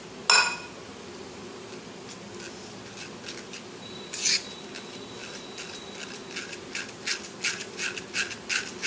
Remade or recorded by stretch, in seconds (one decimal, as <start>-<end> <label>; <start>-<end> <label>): 0.0-8.9 recorded